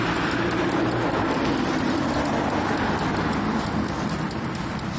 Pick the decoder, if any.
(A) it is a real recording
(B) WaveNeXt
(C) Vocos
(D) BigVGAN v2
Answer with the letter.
A